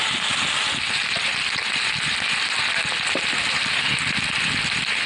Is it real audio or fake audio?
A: real